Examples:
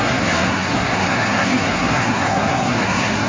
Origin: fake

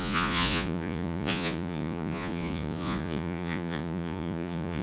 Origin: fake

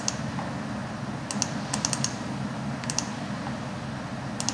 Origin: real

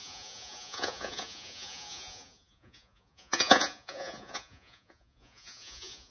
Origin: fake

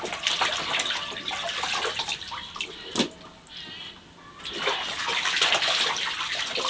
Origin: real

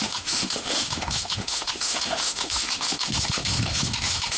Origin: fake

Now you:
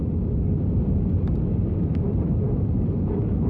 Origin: fake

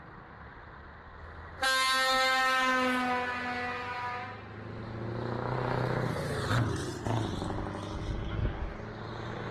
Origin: real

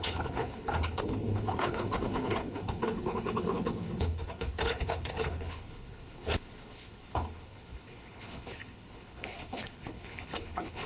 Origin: fake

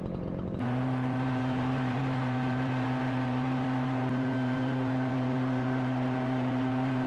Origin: fake